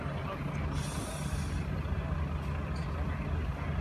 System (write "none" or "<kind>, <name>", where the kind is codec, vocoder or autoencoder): none